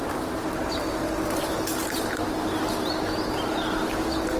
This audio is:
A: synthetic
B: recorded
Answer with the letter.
B